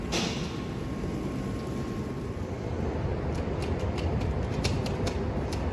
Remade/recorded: recorded